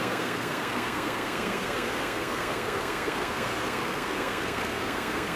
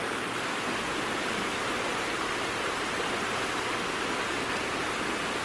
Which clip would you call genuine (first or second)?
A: second